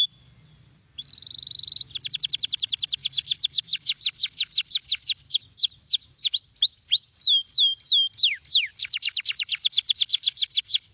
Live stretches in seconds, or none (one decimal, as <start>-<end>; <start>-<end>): 0.0-10.9